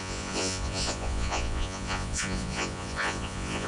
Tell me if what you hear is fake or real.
fake